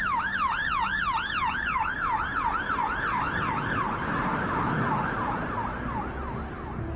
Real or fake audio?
real